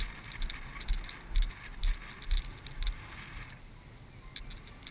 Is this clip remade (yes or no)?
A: no